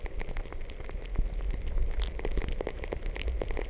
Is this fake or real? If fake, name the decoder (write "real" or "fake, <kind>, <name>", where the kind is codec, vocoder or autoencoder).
real